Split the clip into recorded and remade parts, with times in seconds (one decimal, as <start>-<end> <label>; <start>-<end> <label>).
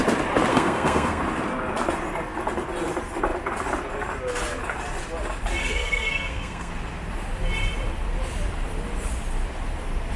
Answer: 0.0-0.5 recorded; 0.5-1.2 remade; 1.2-5.6 recorded; 5.6-6.7 remade; 6.7-10.2 recorded